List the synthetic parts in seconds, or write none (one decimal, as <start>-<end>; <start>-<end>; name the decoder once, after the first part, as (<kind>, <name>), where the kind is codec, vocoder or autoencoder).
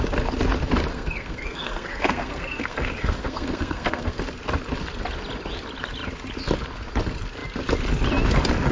0.9-4.2 (codec, SNAC)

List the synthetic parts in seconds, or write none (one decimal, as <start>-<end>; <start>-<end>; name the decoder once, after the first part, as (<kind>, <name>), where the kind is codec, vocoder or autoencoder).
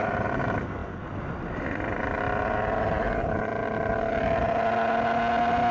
none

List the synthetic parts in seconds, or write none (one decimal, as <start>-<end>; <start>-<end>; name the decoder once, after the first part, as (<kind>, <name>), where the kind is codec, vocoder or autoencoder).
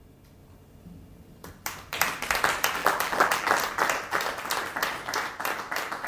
2.8-3.5 (vocoder, BigVGAN v2)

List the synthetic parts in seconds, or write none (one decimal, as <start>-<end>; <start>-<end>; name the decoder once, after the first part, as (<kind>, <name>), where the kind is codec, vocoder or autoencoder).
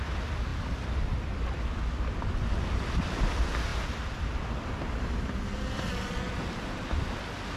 0.0-7.6 (vocoder, BigVGAN v2)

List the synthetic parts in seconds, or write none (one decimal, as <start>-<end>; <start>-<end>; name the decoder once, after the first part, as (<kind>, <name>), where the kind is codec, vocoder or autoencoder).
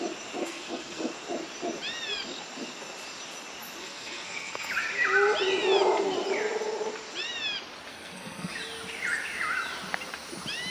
0.4-1.1 (codec, SNAC); 3.8-4.7; 7.9-8.5